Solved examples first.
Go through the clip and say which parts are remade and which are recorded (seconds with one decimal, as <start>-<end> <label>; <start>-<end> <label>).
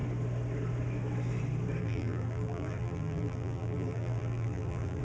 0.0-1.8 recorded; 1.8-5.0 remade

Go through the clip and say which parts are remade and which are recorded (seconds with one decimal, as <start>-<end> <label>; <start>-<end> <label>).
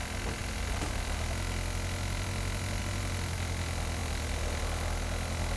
0.0-5.6 recorded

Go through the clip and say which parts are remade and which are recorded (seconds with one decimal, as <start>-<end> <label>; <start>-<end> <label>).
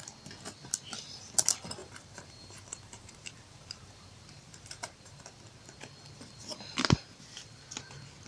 0.0-1.8 recorded; 1.8-5.2 remade; 5.2-8.3 recorded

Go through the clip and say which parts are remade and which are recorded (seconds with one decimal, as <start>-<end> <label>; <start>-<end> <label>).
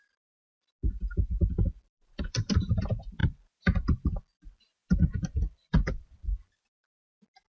0.0-4.8 remade; 4.8-5.5 recorded; 5.5-7.5 remade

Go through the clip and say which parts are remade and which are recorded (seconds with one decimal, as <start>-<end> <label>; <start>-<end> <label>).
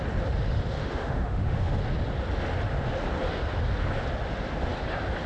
0.0-0.8 recorded; 0.8-1.8 remade; 1.8-5.3 recorded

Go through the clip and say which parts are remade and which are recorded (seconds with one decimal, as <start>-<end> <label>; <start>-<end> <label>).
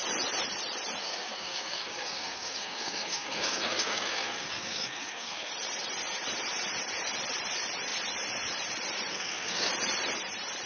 0.0-1.0 recorded; 1.0-5.5 remade; 5.5-9.1 recorded; 9.1-9.7 remade; 9.7-10.7 recorded